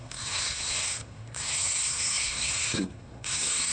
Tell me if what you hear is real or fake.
fake